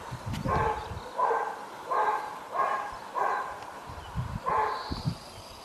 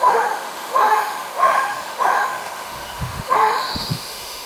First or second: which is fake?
second